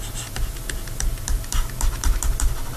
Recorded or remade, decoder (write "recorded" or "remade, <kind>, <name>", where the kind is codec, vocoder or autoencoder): recorded